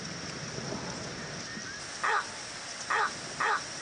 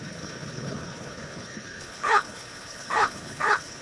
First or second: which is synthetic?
second